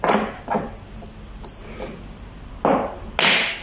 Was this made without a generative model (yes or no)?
yes